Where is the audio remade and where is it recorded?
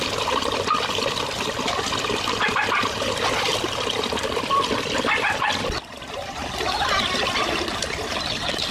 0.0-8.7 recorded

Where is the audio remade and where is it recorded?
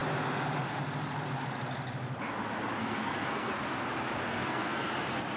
0.0-2.8 recorded; 2.8-3.5 remade; 3.5-4.3 recorded; 4.3-4.9 remade; 4.9-5.4 recorded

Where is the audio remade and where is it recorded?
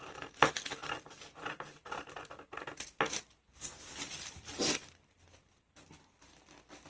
0.0-6.9 recorded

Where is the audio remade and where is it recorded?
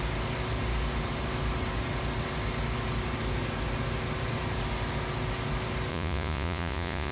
0.0-5.9 recorded; 5.9-7.1 remade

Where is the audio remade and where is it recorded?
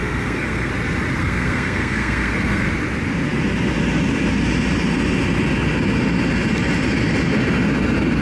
0.0-0.7 remade; 0.7-1.2 recorded; 1.2-2.7 remade; 2.7-8.2 recorded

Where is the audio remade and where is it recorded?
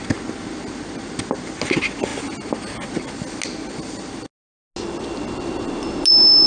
0.0-6.5 recorded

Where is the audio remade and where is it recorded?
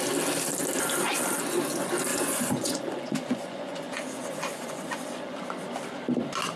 0.0-2.1 recorded; 2.1-5.4 remade; 5.4-6.6 recorded